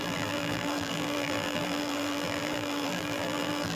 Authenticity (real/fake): fake